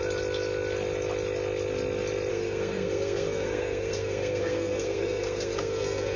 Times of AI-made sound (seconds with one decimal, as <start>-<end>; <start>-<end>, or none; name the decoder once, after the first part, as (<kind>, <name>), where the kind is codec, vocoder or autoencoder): 2.3-6.2 (codec, SNAC)